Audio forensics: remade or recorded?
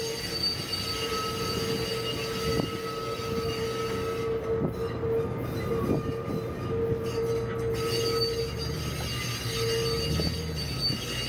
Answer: recorded